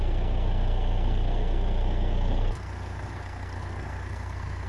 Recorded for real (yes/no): no